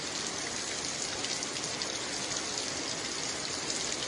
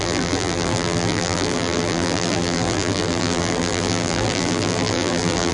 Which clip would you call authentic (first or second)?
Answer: first